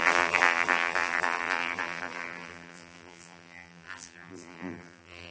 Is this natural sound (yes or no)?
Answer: no